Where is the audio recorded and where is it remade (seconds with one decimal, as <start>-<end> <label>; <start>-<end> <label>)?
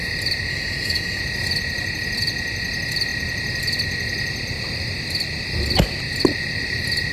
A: 0.0-0.5 recorded; 0.5-1.2 remade; 1.2-7.1 recorded